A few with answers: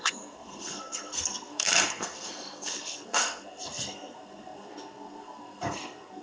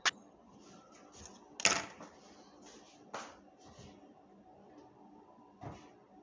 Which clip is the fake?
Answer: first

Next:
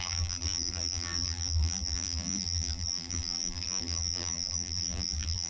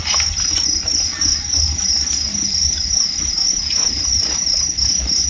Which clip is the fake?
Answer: first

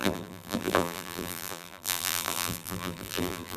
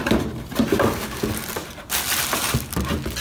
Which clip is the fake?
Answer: first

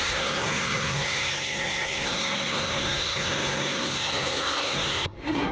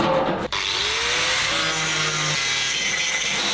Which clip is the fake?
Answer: first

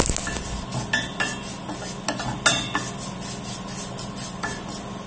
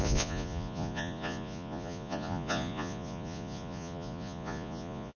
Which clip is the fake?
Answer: second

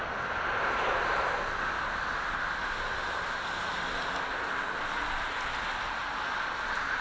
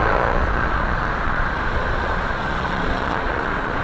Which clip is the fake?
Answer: second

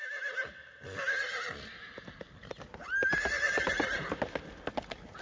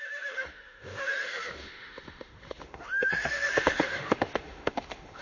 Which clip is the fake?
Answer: second